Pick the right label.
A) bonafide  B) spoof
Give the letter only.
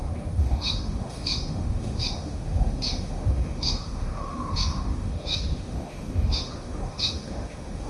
B